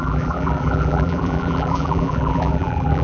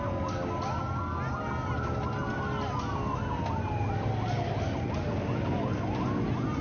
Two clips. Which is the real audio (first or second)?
second